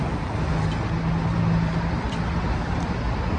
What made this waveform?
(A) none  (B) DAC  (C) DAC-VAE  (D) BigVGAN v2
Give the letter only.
A